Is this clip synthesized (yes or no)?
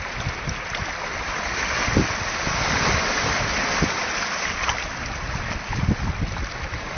no